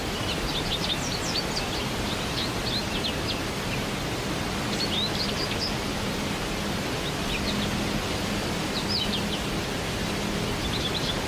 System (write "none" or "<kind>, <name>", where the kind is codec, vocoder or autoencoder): none